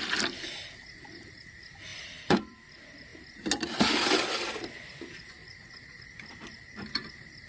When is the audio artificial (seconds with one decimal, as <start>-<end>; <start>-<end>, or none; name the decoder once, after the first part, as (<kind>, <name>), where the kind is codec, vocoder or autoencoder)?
1.9-2.4 (vocoder, BigVGAN v2); 5.4-6.0

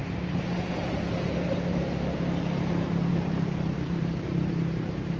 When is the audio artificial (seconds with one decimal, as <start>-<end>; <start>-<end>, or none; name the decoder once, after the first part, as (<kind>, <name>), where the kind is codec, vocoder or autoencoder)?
3.1-5.2 (vocoder, BigVGAN v2)